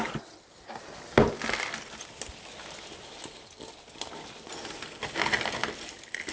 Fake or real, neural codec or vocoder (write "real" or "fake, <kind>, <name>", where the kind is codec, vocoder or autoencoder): real